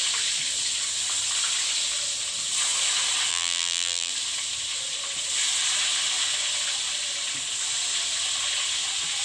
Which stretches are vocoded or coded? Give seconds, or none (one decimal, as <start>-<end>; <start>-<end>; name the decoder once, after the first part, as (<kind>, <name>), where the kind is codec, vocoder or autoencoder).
3.3-4.1 (vocoder, BigVGAN v2)